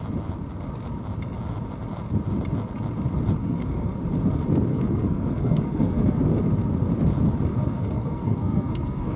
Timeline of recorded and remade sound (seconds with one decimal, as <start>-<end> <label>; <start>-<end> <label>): 0.0-3.4 recorded; 3.4-4.0 remade; 4.0-4.7 recorded; 4.7-6.2 remade; 6.2-7.5 recorded; 7.5-9.2 remade

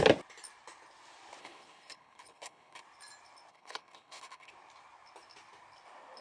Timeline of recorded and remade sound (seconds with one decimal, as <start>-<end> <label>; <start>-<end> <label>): 0.0-1.4 recorded; 1.4-2.8 remade; 2.8-3.5 recorded; 3.5-4.5 remade; 4.5-6.2 recorded

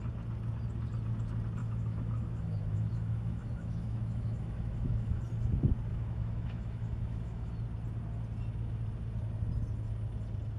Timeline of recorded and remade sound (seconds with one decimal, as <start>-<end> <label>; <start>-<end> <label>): 0.0-1.6 recorded; 1.6-5.2 remade; 5.2-5.9 recorded; 5.9-7.5 remade; 7.5-10.6 recorded